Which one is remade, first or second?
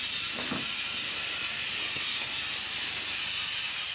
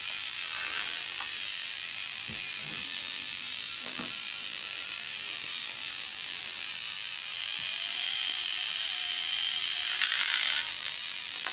second